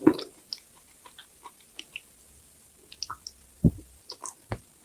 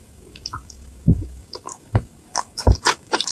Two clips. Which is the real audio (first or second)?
first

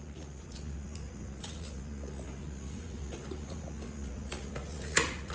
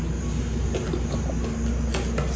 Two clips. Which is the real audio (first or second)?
second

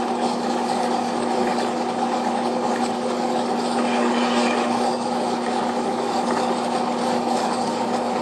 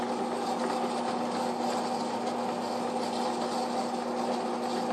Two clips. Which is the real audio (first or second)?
second